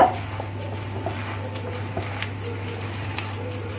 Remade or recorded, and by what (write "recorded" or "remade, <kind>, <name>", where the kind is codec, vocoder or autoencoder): recorded